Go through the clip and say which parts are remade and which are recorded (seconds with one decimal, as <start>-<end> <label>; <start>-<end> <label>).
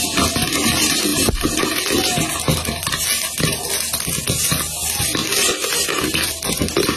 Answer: 0.0-1.1 recorded; 1.1-1.6 remade; 1.6-7.0 recorded